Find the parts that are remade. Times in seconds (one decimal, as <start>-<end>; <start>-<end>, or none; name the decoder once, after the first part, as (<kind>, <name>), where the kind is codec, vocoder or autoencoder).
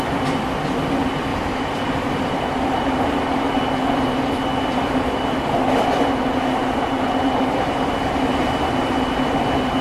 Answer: 1.3-3.6 (vocoder, BigVGAN v2); 6.6-7.9